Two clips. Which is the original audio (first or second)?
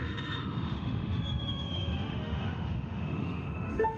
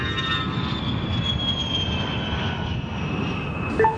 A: second